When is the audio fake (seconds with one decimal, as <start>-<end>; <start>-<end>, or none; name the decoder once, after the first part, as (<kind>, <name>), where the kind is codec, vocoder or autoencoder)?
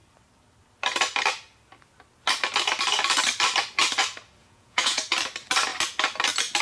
4.4-5.0 (vocoder, Vocos)